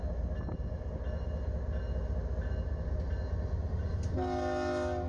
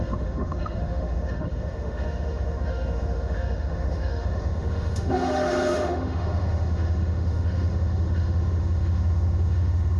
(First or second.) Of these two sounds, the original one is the first